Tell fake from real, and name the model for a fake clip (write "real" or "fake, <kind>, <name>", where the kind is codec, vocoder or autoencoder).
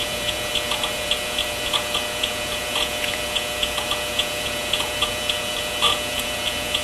fake, vocoder, Vocos